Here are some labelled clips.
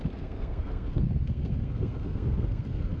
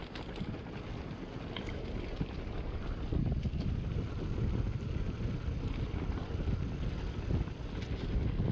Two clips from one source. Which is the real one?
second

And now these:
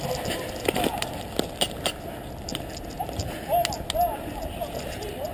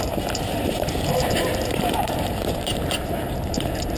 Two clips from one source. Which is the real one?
first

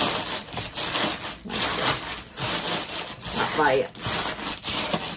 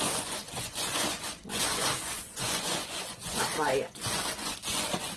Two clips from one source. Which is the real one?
first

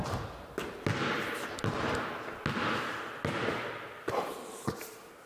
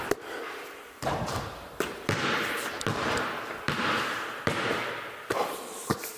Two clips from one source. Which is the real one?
first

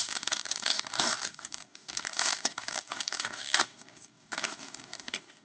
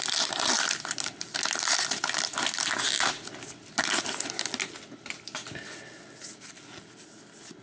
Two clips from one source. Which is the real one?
second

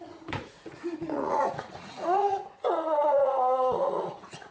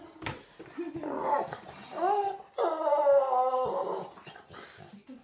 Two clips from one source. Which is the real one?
second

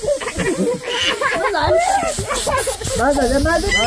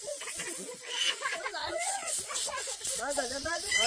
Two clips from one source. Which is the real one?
first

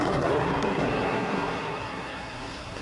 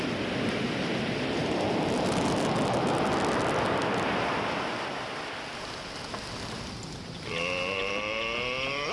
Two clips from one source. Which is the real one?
second